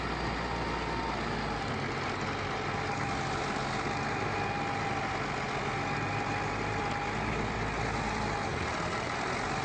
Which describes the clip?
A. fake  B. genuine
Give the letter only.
B